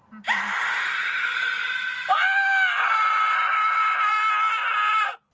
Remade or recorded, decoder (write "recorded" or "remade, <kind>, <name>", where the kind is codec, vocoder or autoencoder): recorded